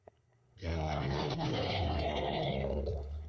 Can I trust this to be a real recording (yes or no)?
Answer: no